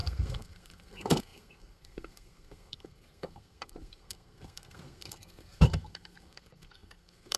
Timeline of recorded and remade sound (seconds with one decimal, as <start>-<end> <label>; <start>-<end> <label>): 0.0-7.4 remade

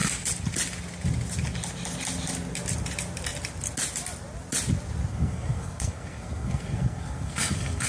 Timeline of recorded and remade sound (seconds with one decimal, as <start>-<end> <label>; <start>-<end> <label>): 0.0-5.1 recorded; 5.1-7.9 remade

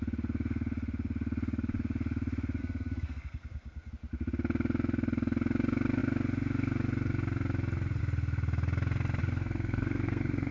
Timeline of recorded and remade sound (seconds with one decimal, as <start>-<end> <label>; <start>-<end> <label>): 0.0-2.6 recorded; 2.6-3.9 remade; 3.9-9.2 recorded; 9.2-10.5 remade

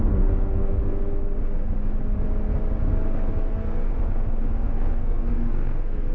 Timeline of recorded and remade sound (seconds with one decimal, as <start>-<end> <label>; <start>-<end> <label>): 0.0-0.8 remade; 0.8-3.5 recorded; 3.5-3.9 remade; 3.9-5.0 recorded; 5.0-6.1 remade

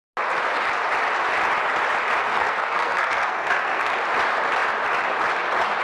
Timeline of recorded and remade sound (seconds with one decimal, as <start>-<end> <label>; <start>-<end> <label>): 0.0-2.2 recorded; 2.2-4.0 remade; 4.0-5.8 recorded